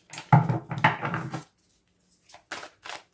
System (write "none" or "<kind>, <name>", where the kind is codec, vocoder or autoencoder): none